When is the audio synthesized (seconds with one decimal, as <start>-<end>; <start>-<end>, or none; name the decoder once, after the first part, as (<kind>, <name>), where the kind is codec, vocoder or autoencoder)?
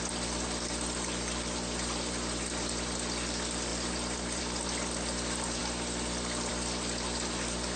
none